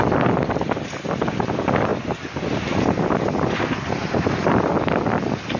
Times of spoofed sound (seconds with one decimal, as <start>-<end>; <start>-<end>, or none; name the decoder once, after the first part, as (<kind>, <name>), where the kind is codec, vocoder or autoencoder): 0.0-1.9 (vocoder, BigVGAN v2); 4.3-5.6

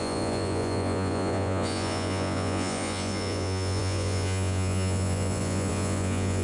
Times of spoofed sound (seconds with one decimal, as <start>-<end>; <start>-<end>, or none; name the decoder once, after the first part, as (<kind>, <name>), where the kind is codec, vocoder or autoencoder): 0.0-6.4 (vocoder, Vocos)

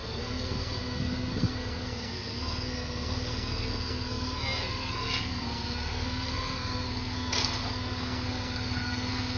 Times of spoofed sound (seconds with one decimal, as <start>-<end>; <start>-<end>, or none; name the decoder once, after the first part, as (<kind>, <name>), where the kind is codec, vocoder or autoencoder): 0.0-9.4 (codec, SNAC)

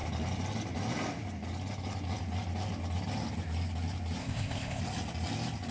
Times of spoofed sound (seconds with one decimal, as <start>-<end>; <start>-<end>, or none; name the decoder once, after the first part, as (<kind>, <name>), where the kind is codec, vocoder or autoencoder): 4.2-4.8 (codec, ZipCodec)

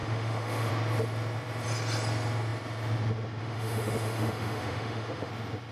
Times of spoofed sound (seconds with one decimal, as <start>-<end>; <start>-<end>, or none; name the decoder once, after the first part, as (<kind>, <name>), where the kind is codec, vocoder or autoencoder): 0.0-0.7 (autoencoder, DAC-VAE); 3.4-5.3

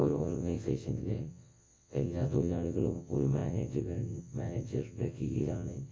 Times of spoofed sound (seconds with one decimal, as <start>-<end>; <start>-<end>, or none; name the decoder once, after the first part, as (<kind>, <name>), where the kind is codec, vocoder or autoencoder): 0.0-5.9 (vocoder, WaveNeXt)

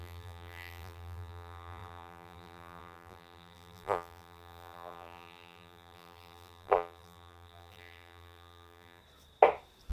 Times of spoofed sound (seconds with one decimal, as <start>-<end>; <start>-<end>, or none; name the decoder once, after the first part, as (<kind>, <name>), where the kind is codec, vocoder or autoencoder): 0.0-9.0 (vocoder, BigVGAN v2)

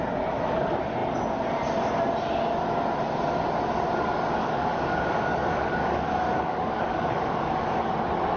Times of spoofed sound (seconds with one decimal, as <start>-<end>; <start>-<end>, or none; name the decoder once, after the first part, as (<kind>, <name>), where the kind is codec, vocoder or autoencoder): 4.4-7.9 (codec, DAC)